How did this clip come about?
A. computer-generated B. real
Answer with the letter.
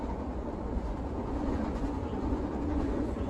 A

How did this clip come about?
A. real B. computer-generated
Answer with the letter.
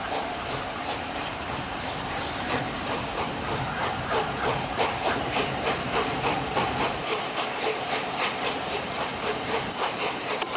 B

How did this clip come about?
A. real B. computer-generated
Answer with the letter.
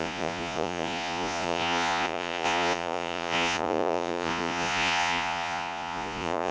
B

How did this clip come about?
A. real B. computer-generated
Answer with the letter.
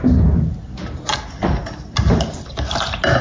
A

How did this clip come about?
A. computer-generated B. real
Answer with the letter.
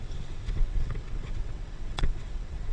A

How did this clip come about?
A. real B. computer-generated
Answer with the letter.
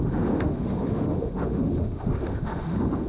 B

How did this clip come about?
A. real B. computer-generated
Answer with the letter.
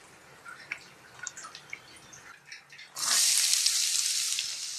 A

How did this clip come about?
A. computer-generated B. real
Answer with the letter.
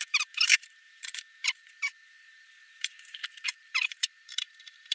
A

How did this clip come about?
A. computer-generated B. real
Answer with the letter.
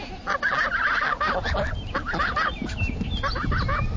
B